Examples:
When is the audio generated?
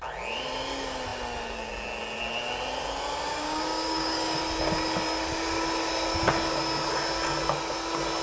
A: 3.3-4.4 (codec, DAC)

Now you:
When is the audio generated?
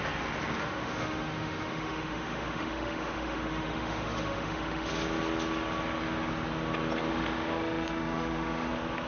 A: 0.6-4.9 (autoencoder, DAC-VAE); 7.1-8.7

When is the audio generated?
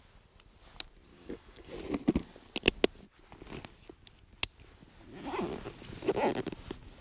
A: 1.1-1.7 (codec, DAC)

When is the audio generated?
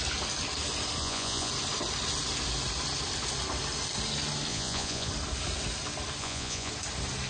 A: 1.0-1.5 (vocoder, Vocos); 4.5-5.1; 6.2-6.7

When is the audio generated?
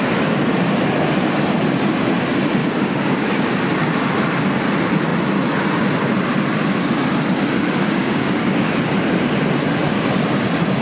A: 2.6-3.5 (codec, DAC); 7.8-8.8